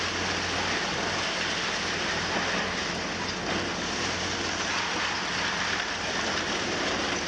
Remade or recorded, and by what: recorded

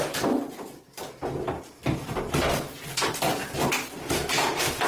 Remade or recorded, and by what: recorded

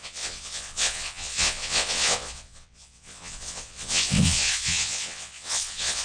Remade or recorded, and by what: remade, vocoder, WaveNeXt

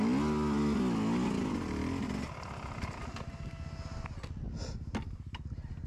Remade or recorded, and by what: recorded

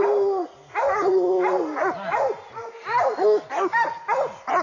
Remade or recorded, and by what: recorded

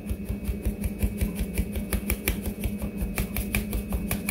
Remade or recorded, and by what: recorded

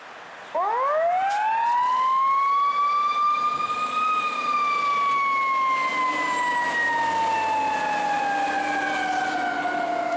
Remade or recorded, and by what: recorded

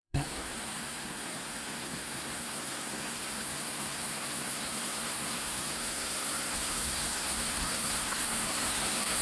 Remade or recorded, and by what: remade, codec, SNAC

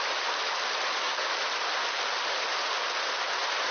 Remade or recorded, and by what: recorded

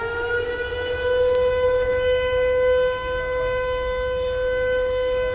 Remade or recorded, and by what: remade, codec, DAC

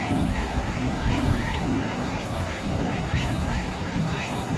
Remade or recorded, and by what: remade, codec, SNAC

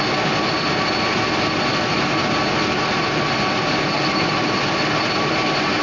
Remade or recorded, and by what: recorded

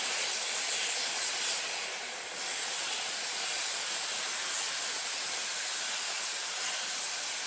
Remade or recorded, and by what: recorded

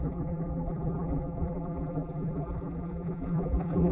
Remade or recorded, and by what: remade, vocoder, BigVGAN v2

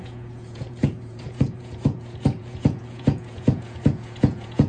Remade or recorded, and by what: remade, vocoder, Vocos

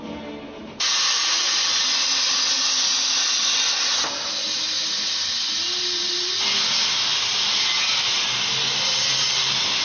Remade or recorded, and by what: recorded